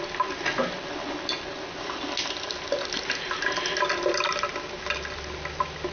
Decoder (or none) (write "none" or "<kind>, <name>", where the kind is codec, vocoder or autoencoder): none